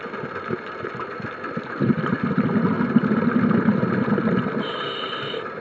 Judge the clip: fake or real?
real